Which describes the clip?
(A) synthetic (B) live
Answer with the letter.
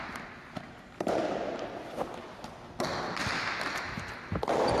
B